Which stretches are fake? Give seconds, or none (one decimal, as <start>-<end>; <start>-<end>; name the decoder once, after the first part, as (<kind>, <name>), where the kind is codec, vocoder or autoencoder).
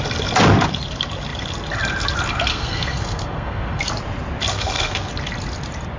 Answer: 2.5-3.8 (codec, SNAC); 4.5-5.1